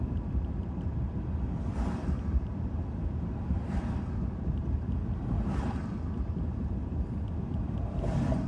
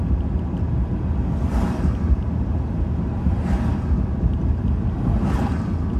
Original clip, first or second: second